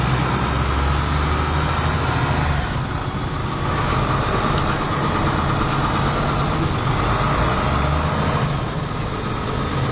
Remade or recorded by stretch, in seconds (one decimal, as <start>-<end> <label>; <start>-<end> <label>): 0.0-3.4 recorded; 3.4-4.0 remade; 4.0-9.9 recorded